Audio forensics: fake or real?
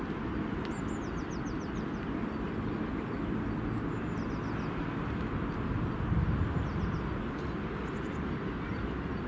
real